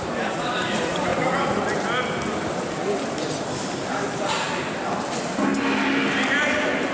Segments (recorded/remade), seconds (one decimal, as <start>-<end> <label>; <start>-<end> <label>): 0.0-1.1 remade; 1.1-5.1 recorded; 5.1-5.5 remade; 5.5-6.4 recorded; 6.4-6.9 remade